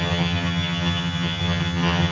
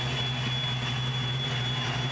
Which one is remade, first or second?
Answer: first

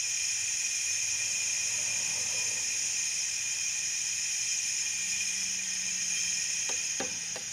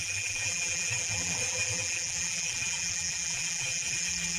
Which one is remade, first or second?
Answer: second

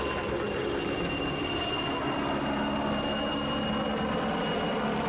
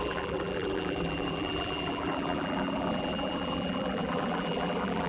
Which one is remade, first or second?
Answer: second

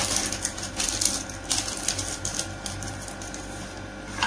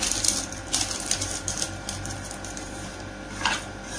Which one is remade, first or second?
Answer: second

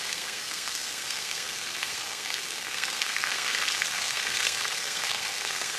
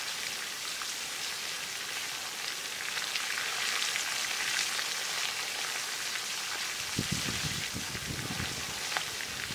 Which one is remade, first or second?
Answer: first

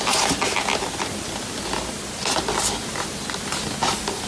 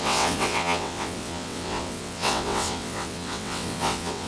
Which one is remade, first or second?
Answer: second